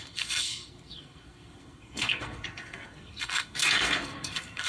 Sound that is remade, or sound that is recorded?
remade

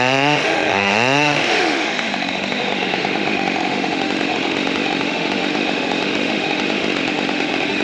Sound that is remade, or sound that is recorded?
remade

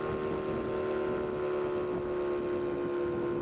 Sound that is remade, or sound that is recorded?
recorded